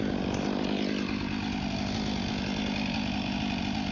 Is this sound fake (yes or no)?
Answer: no